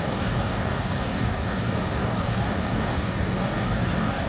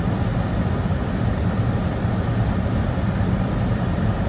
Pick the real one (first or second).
second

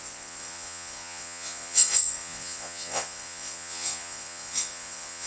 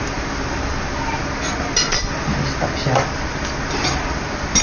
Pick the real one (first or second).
second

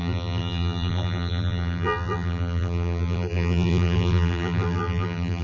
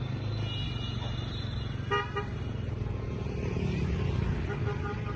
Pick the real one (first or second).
second